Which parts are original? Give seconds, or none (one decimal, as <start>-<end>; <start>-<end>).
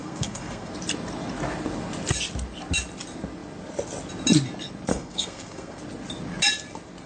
0.7-4.9; 5.8-7.1